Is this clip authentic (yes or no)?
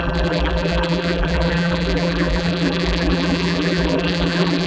no